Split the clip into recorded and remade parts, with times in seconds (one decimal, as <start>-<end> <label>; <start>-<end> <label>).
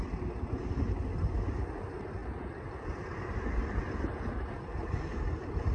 0.0-5.7 recorded